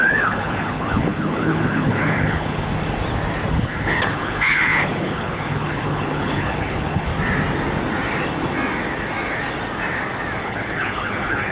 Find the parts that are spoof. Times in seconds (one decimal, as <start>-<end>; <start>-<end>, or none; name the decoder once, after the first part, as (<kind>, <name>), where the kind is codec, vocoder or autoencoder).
0.0-2.7 (codec, HILCodec); 3.5-7.1; 10.4-11.5